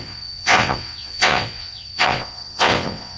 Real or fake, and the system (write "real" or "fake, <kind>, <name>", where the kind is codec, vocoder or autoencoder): fake, vocoder, WaveNeXt